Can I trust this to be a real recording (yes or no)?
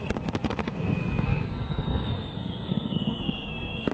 no